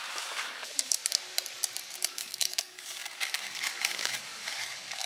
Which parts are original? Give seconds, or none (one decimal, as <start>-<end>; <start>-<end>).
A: 1.0-1.8